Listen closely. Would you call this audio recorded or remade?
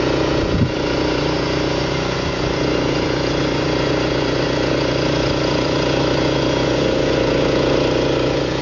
remade